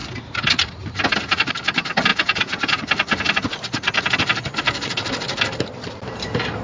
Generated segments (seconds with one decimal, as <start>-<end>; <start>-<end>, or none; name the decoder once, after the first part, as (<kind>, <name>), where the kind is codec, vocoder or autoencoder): 2.1-2.8 (vocoder, Vocos)